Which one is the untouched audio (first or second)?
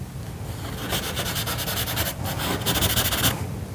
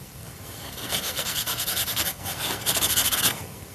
first